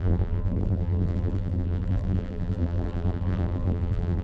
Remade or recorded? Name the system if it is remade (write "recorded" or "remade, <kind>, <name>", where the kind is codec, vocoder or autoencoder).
remade, vocoder, BigVGAN v2